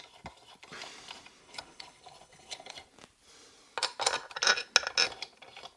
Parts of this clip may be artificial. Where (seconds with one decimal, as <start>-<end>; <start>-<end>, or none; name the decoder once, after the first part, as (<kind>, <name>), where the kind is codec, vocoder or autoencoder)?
1.4-2.7 (codec, HILCodec)